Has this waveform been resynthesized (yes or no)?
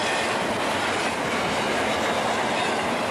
no